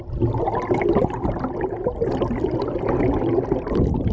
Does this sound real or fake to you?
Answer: real